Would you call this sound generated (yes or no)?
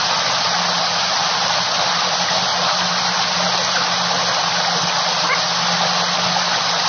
no